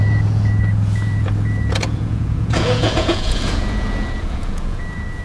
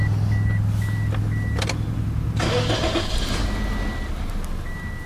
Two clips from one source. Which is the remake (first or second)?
first